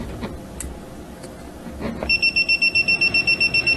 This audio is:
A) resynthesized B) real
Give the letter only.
B